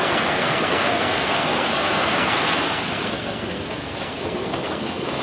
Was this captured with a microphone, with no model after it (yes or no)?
no